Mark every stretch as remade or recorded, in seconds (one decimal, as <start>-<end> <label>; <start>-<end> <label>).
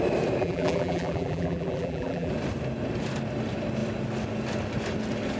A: 0.0-0.4 recorded; 0.4-2.3 remade; 2.3-5.4 recorded